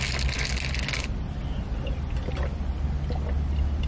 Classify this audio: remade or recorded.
recorded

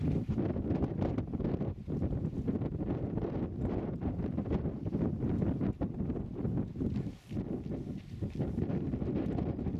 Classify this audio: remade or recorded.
recorded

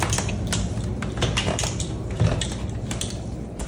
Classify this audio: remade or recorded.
remade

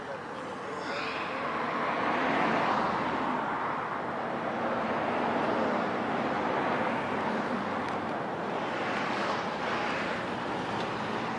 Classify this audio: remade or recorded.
recorded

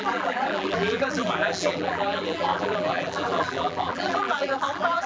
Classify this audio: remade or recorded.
remade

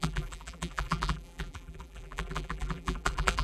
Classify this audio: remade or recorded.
remade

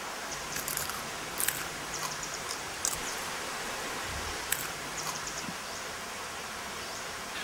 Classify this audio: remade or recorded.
remade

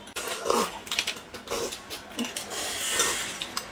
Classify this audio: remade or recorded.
recorded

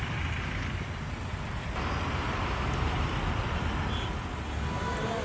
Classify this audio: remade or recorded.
recorded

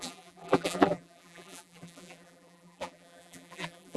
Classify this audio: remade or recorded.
remade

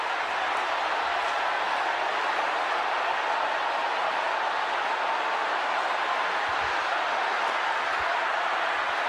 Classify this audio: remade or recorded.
recorded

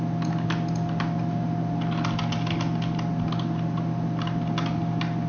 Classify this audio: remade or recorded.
recorded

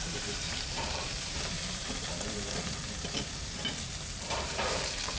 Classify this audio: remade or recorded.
remade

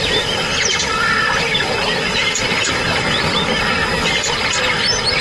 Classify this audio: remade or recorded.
recorded